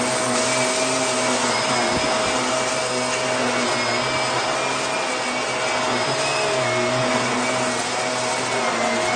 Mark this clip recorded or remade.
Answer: recorded